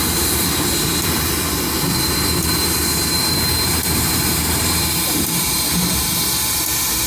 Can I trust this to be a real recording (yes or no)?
no